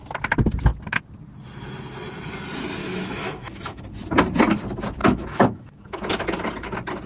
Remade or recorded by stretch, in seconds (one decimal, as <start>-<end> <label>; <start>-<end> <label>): 0.0-2.8 recorded; 2.8-3.8 remade; 3.8-5.0 recorded; 5.0-6.1 remade; 6.1-7.1 recorded